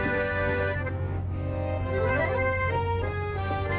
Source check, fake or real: fake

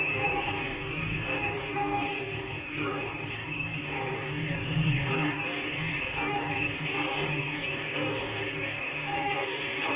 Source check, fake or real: fake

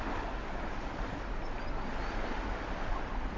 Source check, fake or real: real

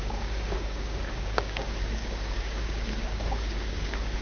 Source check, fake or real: fake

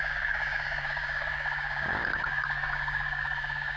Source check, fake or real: fake